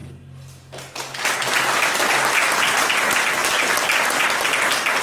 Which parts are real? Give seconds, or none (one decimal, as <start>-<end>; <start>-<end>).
0.0-5.0